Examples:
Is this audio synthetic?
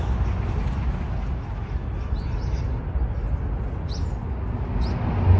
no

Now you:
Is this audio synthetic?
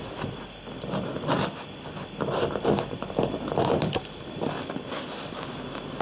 no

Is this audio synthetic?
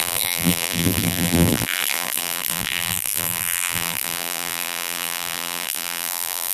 yes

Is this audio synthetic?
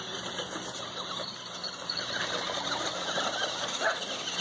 no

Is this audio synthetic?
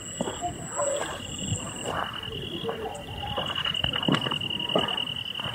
no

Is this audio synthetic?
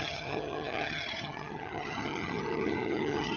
yes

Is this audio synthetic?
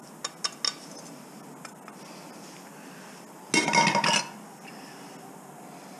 no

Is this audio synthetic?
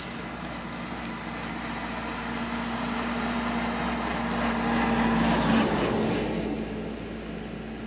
no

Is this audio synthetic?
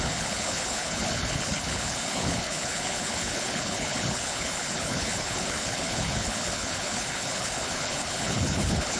yes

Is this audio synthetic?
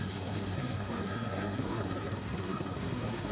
yes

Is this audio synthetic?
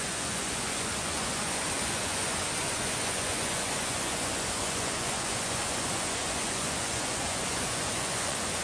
yes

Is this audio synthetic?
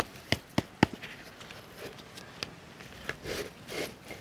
no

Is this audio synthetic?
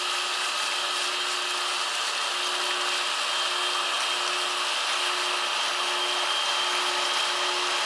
no